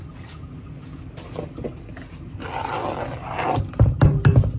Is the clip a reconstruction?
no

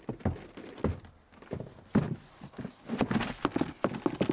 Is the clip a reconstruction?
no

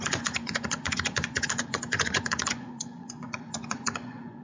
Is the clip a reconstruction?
yes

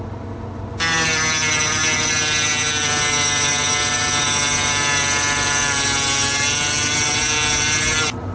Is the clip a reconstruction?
no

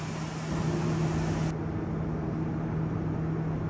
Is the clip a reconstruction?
no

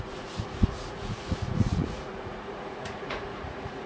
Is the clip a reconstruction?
yes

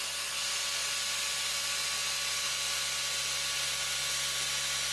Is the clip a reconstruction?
no